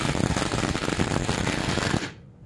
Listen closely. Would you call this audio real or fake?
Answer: real